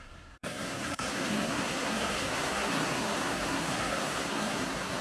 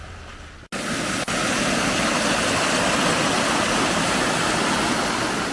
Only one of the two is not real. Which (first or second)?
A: first